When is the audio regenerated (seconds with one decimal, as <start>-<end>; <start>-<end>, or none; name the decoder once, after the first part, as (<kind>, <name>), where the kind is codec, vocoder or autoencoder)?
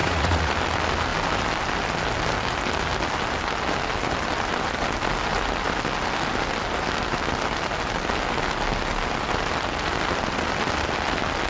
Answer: 0.0-0.5 (vocoder, Vocos)